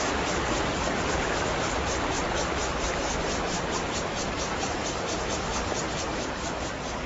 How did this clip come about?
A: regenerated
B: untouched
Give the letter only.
A